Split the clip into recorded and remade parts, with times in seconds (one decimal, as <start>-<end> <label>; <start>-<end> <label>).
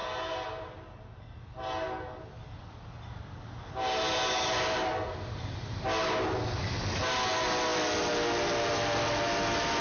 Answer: 0.0-9.8 recorded